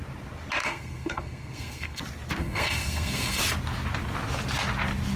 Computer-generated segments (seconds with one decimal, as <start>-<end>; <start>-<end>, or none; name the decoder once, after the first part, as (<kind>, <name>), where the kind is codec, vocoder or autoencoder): 0.6-2.0 (codec, SNAC); 2.4-3.4